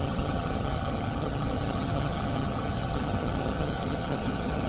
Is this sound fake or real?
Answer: fake